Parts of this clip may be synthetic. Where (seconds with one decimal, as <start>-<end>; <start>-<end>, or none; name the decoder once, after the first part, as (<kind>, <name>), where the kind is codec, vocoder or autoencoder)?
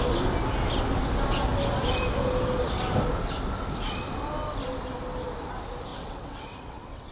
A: 5.9-7.1 (vocoder, WaveNeXt)